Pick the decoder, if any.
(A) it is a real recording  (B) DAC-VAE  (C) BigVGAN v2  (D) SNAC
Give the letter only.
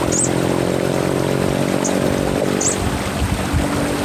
A